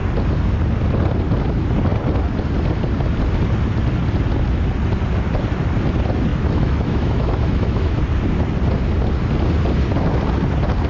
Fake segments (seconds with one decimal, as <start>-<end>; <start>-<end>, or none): 6.3-8.0